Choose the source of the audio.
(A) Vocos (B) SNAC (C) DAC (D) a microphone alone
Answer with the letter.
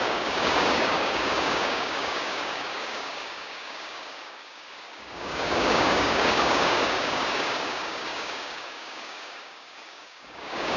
C